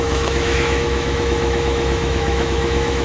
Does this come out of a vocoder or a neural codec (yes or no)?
yes